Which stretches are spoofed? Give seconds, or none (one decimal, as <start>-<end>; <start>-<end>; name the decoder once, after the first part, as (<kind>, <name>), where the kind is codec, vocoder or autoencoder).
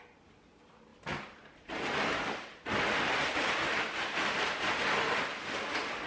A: 0.9-4.6 (vocoder, BigVGAN v2)